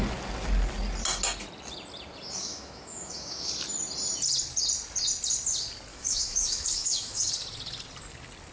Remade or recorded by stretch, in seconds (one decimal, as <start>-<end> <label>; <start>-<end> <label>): 0.0-2.4 recorded; 2.4-3.5 remade; 3.5-5.9 recorded; 5.9-7.3 remade; 7.3-8.5 recorded